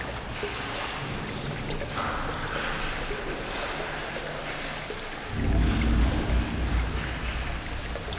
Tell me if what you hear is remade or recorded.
recorded